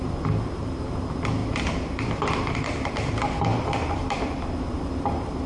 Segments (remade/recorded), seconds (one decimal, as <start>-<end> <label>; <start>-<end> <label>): 0.0-1.4 recorded; 1.4-3.1 remade; 3.1-3.5 recorded; 3.5-4.9 remade; 4.9-5.5 recorded